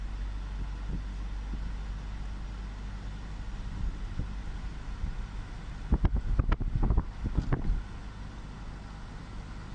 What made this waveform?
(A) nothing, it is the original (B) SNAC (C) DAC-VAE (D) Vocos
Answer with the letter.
A